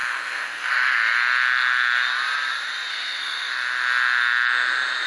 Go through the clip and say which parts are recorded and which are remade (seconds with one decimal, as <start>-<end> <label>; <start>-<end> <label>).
0.0-0.7 remade; 0.7-2.9 recorded; 2.9-3.5 remade; 3.5-5.1 recorded